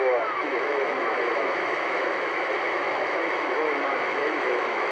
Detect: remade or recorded remade